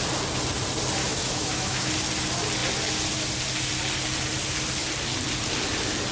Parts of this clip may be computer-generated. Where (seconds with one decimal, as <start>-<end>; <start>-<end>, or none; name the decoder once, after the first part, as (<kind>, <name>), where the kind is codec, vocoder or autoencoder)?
1.0-1.9 (autoencoder, DAC-VAE)

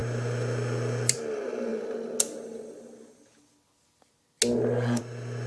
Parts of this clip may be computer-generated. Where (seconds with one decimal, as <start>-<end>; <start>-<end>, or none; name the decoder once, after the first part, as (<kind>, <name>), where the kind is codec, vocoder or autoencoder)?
none

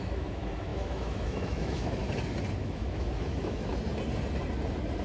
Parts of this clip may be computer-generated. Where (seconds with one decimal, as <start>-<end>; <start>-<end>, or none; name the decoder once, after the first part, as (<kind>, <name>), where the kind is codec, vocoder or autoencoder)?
0.0-2.0 (autoencoder, DAC-VAE); 2.6-3.7

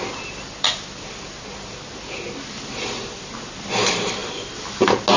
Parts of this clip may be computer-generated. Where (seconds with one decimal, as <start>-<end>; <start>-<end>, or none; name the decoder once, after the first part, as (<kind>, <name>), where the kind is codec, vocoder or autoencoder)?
none

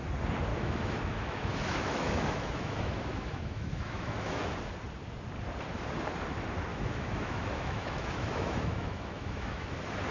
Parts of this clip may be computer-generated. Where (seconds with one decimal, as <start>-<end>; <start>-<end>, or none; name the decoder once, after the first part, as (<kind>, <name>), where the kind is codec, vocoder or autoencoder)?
0.5-4.5 (autoencoder, DAC-VAE); 6.7-9.7

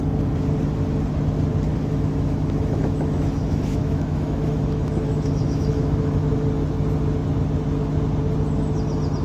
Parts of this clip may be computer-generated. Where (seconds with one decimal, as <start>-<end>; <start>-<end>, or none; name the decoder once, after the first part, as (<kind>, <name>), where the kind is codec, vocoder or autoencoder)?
1.7-6.3 (autoencoder, DAC-VAE)